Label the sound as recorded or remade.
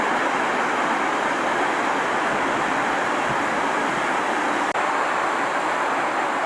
recorded